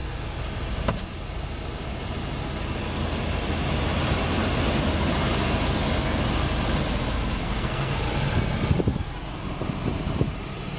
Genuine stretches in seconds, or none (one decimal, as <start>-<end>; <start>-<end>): 0.0-7.4; 8.0-10.8